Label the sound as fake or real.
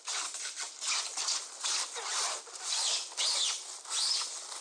real